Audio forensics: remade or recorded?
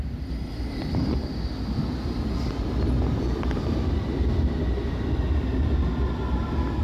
recorded